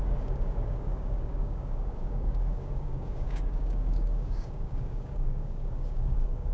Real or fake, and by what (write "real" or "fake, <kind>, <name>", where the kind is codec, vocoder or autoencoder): fake, codec, DAC